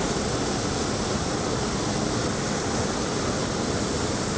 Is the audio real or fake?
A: real